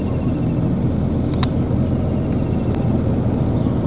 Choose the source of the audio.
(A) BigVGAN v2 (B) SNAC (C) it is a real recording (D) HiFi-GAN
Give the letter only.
C